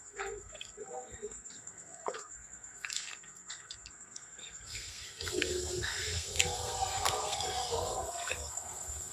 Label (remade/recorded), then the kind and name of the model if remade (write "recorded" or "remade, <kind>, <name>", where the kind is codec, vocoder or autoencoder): remade, codec, SNAC